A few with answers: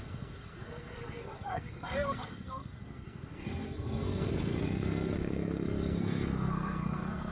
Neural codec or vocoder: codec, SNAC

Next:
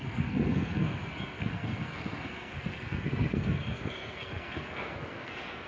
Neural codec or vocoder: codec, SNAC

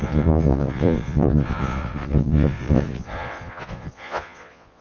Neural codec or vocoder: vocoder, Vocos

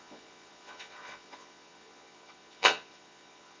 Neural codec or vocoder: vocoder, Vocos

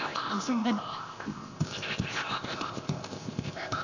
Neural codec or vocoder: codec, ZipCodec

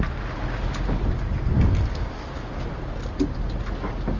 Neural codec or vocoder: none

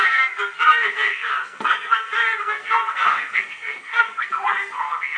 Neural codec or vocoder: codec, SNAC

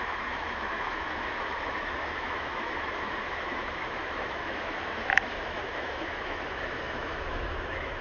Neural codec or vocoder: autoencoder, DAC-VAE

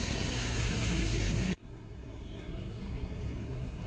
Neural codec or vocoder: codec, SNAC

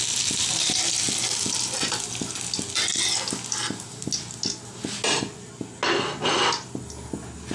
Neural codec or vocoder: none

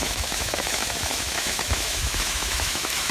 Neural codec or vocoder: autoencoder, DAC-VAE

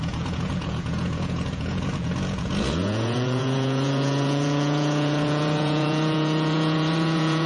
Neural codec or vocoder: vocoder, Vocos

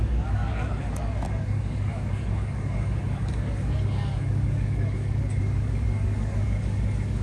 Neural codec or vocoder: codec, DAC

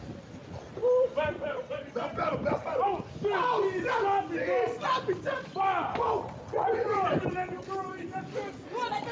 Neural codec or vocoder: none